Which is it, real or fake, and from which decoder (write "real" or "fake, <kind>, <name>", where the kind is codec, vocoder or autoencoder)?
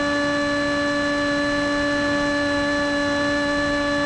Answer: real